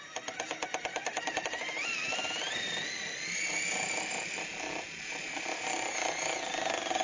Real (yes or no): yes